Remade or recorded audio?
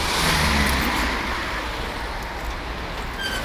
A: recorded